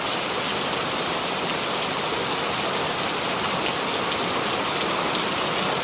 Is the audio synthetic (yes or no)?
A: no